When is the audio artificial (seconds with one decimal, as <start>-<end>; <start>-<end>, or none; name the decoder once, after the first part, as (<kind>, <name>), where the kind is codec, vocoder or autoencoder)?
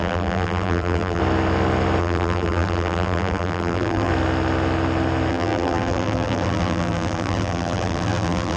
0.0-1.2 (vocoder, BigVGAN v2); 2.0-4.1; 5.3-8.6